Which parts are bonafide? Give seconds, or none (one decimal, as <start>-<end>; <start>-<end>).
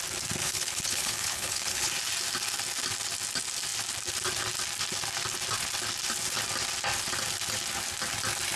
0.0-0.4; 1.9-8.6